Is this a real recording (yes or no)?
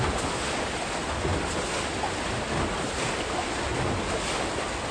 yes